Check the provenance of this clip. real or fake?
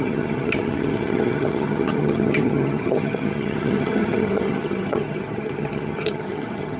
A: fake